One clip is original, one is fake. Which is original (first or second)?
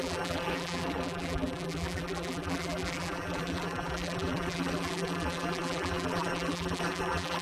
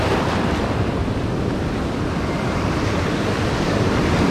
second